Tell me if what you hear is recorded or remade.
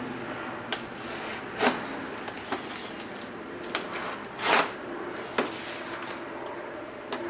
recorded